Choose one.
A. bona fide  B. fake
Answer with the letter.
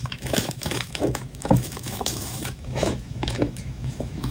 B